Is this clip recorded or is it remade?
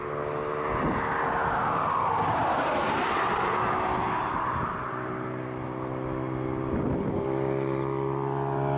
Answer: recorded